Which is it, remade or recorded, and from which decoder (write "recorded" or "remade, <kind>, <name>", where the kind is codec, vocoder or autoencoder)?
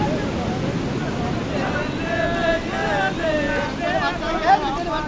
recorded